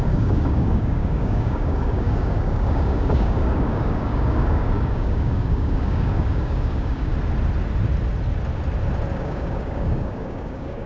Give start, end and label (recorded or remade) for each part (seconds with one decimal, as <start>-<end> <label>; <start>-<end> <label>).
0.0-7.1 remade; 7.1-9.1 recorded; 9.1-10.9 remade